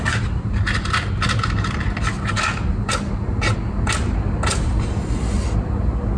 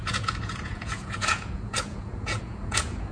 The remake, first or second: second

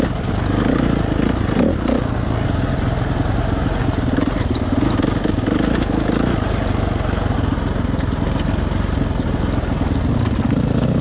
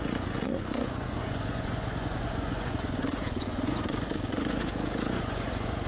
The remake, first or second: second